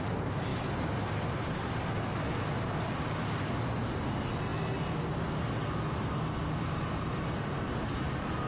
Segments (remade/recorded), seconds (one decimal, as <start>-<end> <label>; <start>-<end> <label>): 0.0-8.5 recorded